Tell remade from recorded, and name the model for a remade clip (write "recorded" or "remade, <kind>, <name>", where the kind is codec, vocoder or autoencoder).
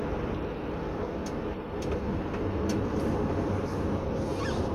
recorded